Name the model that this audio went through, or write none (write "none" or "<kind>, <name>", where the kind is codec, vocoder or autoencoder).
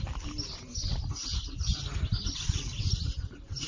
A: none